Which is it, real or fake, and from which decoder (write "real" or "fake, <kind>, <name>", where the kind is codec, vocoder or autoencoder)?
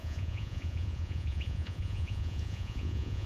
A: fake, vocoder, Vocos